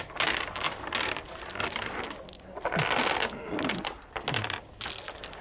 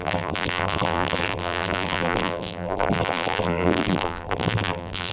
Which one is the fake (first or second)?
second